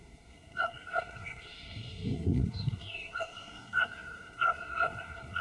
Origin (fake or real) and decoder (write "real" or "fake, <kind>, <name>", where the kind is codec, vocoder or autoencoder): fake, codec, SNAC